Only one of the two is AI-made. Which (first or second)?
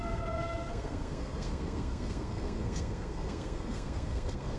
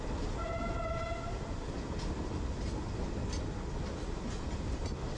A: first